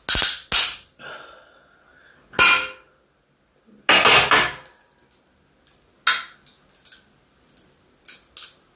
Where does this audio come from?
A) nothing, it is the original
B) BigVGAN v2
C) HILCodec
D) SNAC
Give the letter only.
A